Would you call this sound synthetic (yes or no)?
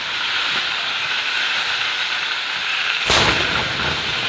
yes